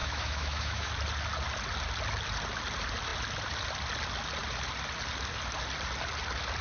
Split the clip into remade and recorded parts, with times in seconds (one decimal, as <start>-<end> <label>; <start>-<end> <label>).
0.0-0.9 remade; 0.9-6.6 recorded